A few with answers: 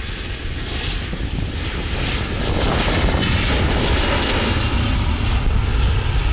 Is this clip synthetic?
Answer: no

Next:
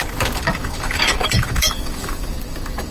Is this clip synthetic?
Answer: yes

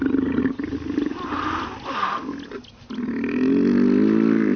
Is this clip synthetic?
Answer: no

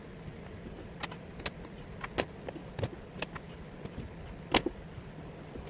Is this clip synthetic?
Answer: no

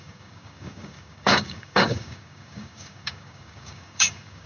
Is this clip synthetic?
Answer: yes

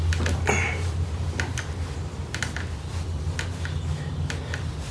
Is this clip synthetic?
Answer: no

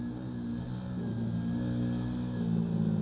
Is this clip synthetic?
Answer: no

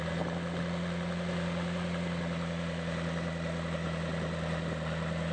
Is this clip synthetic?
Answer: no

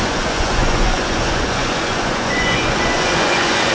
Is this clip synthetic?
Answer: yes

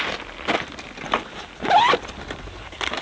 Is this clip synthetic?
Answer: no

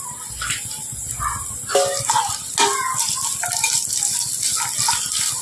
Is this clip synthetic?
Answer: no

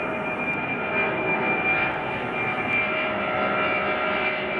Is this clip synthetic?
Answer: yes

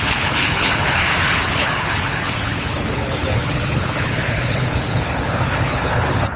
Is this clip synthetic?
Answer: yes